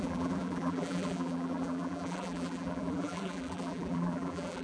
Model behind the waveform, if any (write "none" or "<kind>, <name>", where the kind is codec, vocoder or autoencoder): vocoder, BigVGAN v2